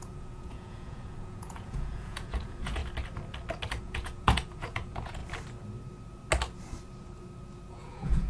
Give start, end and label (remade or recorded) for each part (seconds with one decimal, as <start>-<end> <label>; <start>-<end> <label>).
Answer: 0.0-2.8 remade; 2.8-3.8 recorded; 3.8-5.2 remade; 5.2-7.7 recorded; 7.7-8.3 remade